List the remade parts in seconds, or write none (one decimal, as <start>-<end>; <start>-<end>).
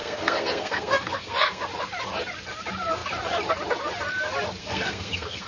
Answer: 0.0-1.6; 4.6-5.5